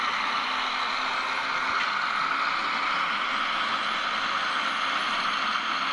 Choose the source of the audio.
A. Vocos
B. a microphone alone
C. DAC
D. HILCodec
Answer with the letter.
B